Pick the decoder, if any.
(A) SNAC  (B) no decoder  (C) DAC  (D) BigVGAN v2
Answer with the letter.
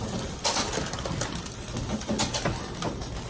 B